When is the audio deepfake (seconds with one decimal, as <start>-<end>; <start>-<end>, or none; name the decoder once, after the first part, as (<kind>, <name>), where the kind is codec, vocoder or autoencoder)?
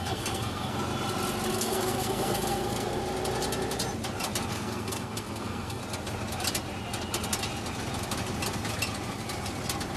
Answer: 0.0-0.9 (codec, SNAC); 1.5-3.0; 4.5-5.8